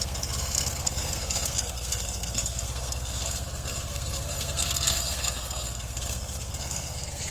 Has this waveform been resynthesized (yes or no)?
yes